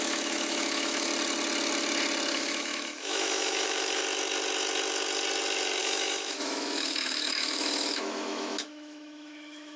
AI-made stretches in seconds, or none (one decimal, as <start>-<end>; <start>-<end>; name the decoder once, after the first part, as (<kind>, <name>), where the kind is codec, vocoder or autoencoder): 0.0-1.1 (autoencoder, DAC-VAE); 2.3-4.0; 5.8-9.8